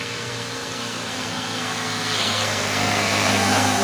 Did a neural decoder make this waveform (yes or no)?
yes